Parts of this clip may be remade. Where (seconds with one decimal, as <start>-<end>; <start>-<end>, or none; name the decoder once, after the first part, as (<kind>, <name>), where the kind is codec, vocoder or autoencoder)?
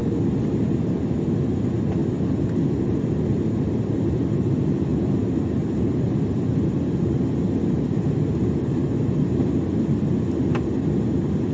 none